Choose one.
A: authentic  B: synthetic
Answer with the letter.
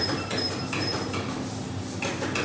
A